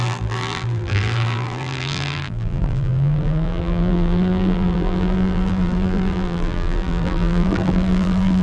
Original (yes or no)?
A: no